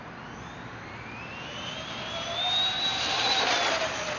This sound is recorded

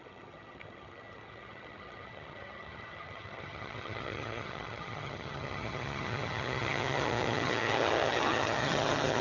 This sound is remade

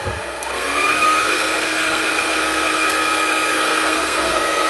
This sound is remade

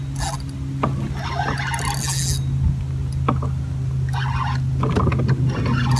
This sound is recorded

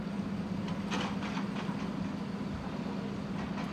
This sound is recorded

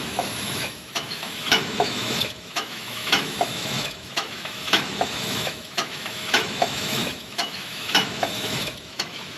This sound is remade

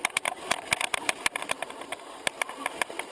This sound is recorded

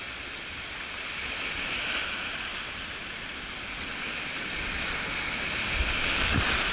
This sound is recorded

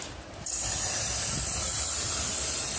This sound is recorded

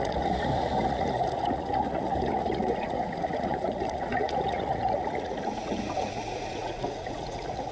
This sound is remade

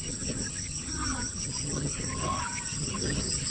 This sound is remade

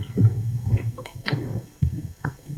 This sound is remade